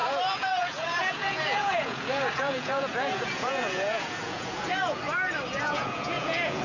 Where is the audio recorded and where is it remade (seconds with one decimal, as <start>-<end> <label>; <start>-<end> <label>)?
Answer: 0.0-5.0 remade; 5.0-5.6 recorded; 5.6-6.6 remade